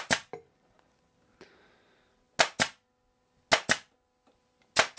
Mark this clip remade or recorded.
recorded